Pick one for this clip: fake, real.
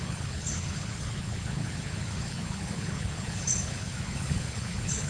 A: fake